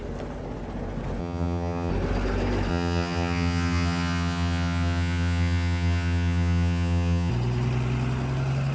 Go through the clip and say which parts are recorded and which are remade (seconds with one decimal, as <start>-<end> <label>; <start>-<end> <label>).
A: 0.0-1.2 recorded; 1.2-1.9 remade; 1.9-2.7 recorded; 2.7-7.3 remade; 7.3-8.7 recorded